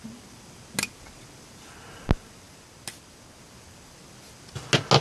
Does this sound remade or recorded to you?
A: recorded